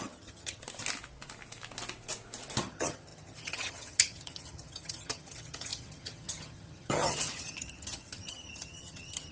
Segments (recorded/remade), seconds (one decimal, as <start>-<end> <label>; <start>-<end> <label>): 0.0-0.6 remade; 0.6-2.6 recorded; 2.6-9.3 remade